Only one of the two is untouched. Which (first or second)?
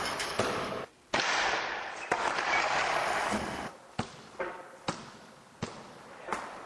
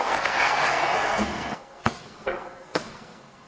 first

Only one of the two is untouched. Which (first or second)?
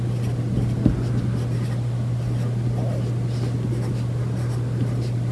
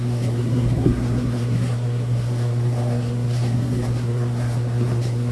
first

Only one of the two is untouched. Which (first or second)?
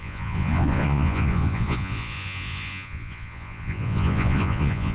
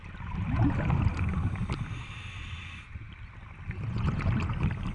second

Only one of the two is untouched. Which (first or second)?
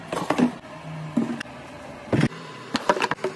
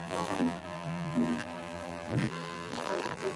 first